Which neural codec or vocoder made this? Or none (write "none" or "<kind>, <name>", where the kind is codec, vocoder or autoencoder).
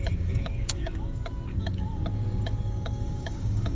codec, DAC